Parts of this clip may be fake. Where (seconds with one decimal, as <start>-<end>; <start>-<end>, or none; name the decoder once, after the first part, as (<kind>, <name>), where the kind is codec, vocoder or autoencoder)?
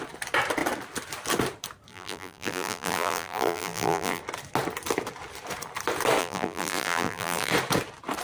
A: 1.9-4.2 (vocoder, BigVGAN v2); 6.2-7.5